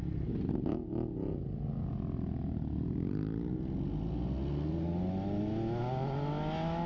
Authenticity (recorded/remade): recorded